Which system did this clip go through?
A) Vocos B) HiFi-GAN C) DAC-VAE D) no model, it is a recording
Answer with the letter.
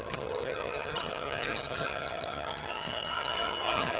B